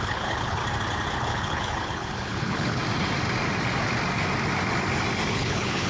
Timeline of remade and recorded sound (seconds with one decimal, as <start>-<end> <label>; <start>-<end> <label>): 0.0-0.6 remade; 0.6-1.2 recorded; 1.2-2.8 remade; 2.8-5.3 recorded; 5.3-5.9 remade